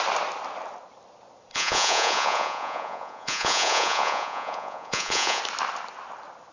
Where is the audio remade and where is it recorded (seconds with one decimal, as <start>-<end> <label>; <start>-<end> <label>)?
0.0-1.5 recorded; 1.5-5.4 remade; 5.4-6.5 recorded